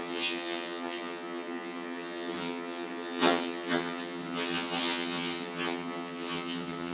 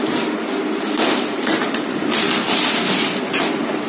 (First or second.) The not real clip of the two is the first